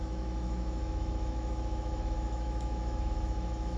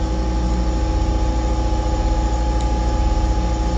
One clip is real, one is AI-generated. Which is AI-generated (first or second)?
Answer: first